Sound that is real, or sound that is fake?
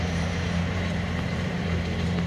fake